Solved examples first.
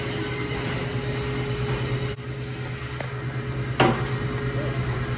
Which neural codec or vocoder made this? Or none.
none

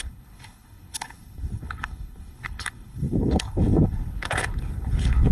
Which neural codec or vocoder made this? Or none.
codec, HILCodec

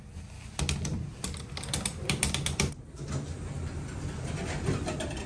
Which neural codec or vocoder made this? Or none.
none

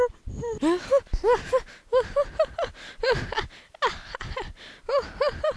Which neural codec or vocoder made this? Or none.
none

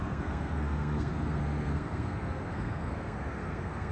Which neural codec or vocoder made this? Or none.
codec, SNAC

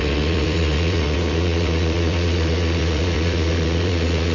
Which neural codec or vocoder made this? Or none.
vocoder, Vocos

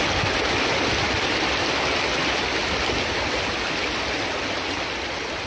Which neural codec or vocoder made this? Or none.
none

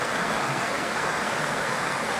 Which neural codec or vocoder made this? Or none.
codec, SNAC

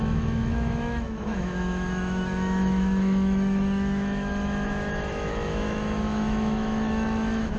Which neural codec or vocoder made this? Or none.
autoencoder, DAC-VAE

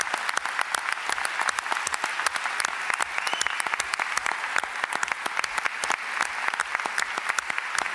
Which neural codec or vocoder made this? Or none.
none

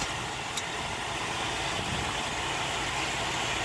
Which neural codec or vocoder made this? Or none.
none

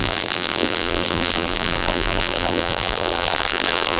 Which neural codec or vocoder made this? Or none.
vocoder, BigVGAN v2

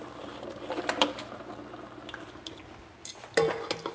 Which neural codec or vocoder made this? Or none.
none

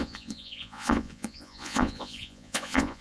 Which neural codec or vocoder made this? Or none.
vocoder, Vocos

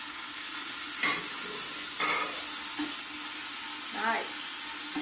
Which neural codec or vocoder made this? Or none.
none